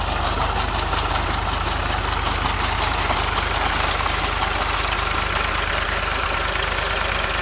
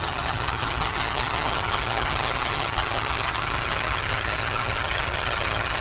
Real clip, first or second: first